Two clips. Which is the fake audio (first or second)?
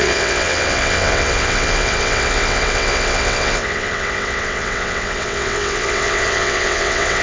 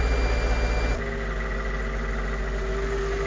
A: first